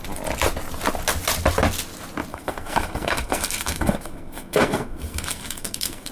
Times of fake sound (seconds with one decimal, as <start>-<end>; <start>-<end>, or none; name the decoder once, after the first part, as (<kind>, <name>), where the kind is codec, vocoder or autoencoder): 2.3-6.1 (codec, SNAC)